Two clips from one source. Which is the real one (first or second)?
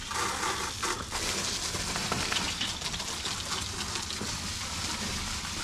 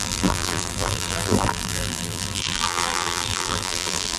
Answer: first